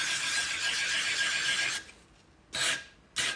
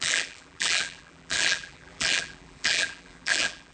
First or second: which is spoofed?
second